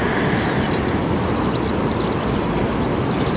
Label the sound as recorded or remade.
recorded